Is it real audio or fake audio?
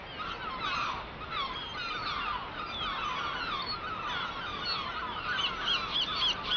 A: real